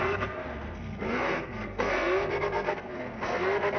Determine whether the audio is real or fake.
fake